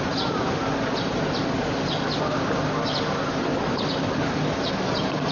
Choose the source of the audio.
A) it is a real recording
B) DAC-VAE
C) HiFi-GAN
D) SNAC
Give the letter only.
A